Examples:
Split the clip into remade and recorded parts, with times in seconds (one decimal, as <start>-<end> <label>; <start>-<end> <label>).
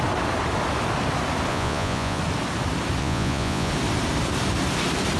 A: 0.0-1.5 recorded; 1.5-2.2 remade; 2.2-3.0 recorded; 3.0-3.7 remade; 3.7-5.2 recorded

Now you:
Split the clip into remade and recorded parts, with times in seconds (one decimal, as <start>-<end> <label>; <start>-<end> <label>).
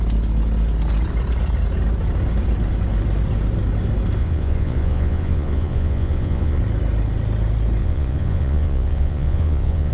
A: 0.0-4.2 recorded; 4.2-6.6 remade; 6.6-7.8 recorded; 7.8-9.9 remade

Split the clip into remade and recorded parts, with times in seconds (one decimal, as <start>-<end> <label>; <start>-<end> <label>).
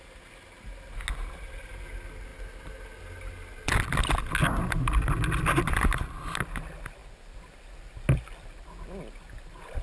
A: 0.0-9.8 recorded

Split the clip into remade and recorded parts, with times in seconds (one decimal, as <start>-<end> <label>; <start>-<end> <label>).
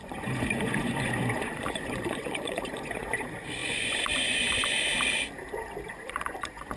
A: 0.0-4.9 remade; 4.9-5.9 recorded; 5.9-6.8 remade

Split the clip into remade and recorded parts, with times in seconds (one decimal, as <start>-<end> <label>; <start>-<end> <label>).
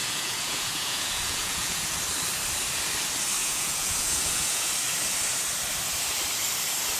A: 0.0-2.0 remade; 2.0-3.4 recorded; 3.4-4.7 remade; 4.7-7.0 recorded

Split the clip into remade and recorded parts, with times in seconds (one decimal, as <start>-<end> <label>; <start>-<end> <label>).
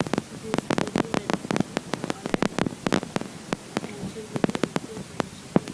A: 0.0-5.7 recorded